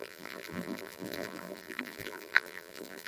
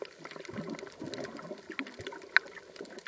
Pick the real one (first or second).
second